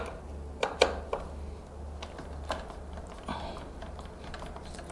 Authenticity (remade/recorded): recorded